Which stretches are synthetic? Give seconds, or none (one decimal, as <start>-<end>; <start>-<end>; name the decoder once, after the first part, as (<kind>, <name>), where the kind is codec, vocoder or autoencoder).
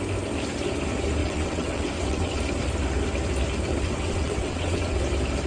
1.2-2.4 (vocoder, WaveNeXt); 3.7-5.0